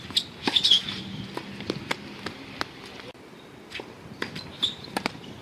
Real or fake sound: real